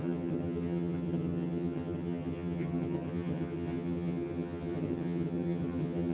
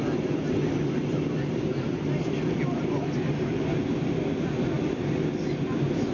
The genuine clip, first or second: second